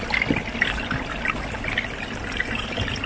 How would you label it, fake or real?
real